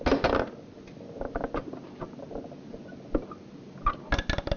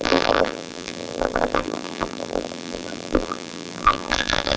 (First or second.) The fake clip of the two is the second